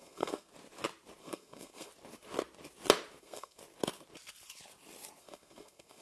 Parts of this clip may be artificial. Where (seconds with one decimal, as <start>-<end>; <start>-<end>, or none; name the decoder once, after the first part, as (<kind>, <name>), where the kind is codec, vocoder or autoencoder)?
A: 0.0-0.5 (codec, SNAC); 1.2-1.9; 3.2-3.6; 5.2-6.0

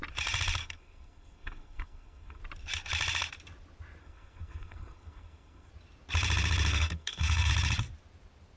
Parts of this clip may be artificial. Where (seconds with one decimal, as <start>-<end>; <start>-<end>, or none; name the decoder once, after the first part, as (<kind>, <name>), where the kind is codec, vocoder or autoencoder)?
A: 0.6-2.4 (codec, SNAC); 4.0-5.7; 6.7-7.5